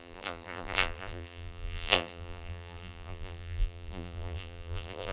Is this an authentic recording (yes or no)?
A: no